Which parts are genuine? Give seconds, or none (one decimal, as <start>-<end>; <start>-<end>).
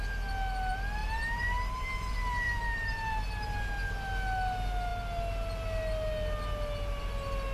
0.0-1.0; 3.2-7.5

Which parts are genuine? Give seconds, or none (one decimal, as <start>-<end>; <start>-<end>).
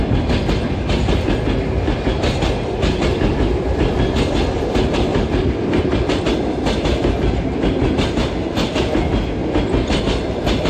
0.0-5.1; 6.2-9.4; 10.0-10.7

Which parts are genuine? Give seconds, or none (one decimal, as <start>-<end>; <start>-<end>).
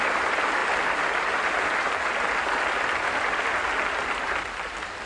0.0-5.1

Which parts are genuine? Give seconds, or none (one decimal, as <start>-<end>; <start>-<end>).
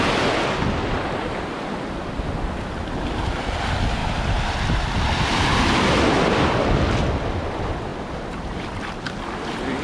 0.0-4.0; 6.8-7.9; 8.9-9.8